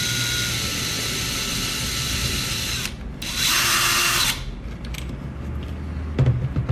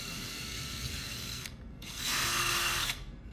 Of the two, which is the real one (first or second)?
first